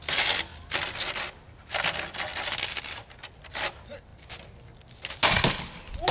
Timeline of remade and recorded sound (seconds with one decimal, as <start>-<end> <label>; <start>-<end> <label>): 0.0-6.1 recorded